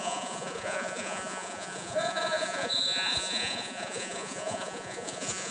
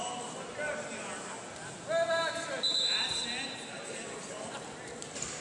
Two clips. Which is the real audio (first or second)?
second